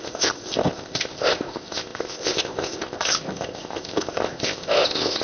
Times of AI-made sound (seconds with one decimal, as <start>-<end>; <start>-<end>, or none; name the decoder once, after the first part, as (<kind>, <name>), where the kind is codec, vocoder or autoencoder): 0.0-5.2 (codec, ZipCodec)